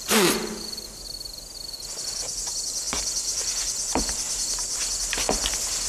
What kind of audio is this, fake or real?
real